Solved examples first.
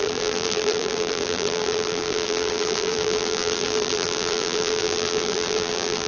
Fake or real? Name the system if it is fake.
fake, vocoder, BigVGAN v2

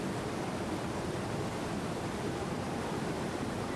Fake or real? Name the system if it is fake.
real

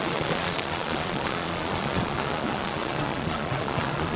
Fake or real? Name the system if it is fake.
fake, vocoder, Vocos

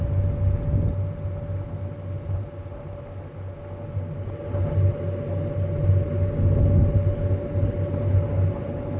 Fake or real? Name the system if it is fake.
real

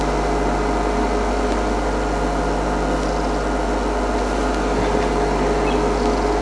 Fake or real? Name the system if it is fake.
real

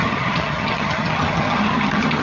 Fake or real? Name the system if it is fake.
fake, vocoder, HiFi-GAN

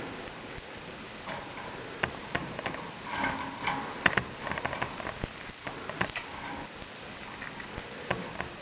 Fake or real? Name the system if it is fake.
real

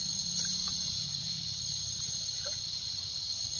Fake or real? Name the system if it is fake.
fake, vocoder, Vocos